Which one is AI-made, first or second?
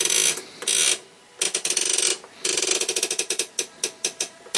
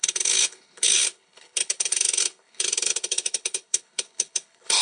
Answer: second